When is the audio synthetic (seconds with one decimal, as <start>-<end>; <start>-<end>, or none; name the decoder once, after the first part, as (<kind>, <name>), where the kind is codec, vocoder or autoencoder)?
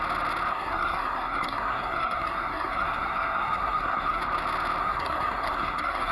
0.5-4.2 (codec, SNAC); 4.8-6.1